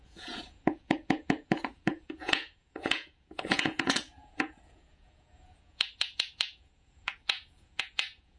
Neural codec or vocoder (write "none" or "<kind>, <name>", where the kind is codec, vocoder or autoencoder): vocoder, Vocos